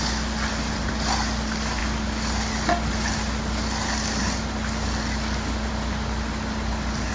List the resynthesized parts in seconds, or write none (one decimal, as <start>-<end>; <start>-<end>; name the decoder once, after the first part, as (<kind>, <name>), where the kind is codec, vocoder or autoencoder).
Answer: none